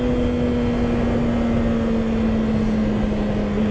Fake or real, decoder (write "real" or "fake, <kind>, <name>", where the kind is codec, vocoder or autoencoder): real